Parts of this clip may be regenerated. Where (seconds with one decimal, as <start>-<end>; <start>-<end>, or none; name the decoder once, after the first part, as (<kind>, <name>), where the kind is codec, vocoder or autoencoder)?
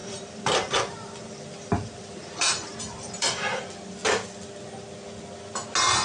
0.0-3.6 (vocoder, BigVGAN v2)